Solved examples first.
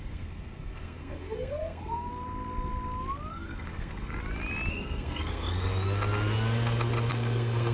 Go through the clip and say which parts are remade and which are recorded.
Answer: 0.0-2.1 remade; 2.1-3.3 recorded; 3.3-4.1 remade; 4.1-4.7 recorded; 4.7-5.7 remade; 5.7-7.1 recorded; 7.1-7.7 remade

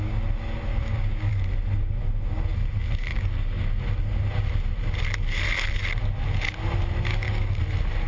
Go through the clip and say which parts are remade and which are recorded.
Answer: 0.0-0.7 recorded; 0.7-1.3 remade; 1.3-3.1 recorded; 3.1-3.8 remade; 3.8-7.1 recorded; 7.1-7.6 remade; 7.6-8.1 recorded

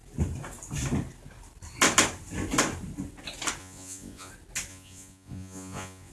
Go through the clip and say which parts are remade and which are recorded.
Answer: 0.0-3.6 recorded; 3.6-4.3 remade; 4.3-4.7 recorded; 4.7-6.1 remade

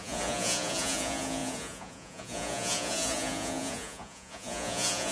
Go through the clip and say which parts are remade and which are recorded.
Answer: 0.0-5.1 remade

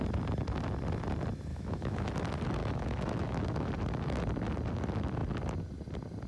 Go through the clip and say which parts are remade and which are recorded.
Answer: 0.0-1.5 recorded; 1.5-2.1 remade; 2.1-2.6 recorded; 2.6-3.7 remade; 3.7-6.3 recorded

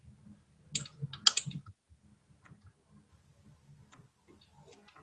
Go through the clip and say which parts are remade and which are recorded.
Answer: 0.0-5.0 recorded

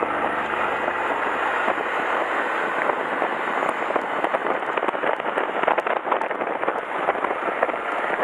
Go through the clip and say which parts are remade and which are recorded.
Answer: 0.0-4.4 remade; 4.4-5.9 recorded; 5.9-8.2 remade

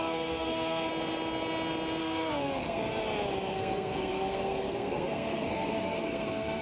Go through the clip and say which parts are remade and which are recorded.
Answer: 0.0-0.9 remade; 0.9-2.0 recorded; 2.0-2.9 remade; 2.9-3.5 recorded; 3.5-6.6 remade